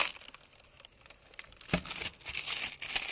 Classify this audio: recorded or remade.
recorded